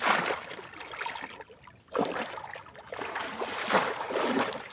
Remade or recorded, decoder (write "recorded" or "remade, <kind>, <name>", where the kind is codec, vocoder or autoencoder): recorded